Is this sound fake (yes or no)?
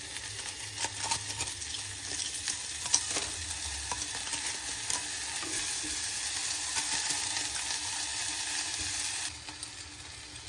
no